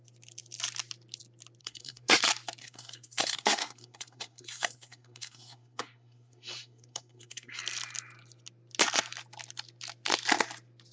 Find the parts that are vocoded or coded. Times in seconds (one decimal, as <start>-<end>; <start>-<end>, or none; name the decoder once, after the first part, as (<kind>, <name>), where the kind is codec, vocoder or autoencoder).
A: 1.6-2.2 (codec, SNAC); 2.6-7.6